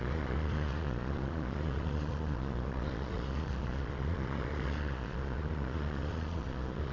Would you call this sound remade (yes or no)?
yes